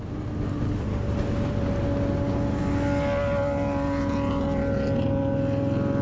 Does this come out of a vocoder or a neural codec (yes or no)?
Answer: no